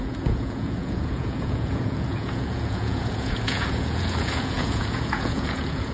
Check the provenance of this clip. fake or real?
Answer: fake